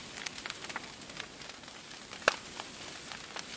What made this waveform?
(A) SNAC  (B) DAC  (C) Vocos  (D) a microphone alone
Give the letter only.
D